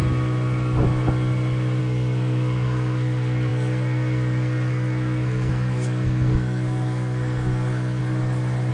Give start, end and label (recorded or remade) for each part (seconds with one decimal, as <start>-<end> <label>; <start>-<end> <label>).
0.0-1.8 recorded; 1.8-8.0 remade; 8.0-8.7 recorded